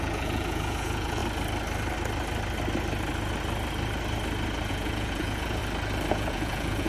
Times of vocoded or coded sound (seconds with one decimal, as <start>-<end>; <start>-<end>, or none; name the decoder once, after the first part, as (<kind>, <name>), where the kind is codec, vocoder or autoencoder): 0.0-1.2 (vocoder, Vocos); 4.7-5.6; 6.1-6.9